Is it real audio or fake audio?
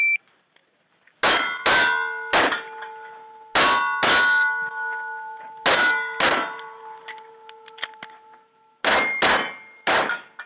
real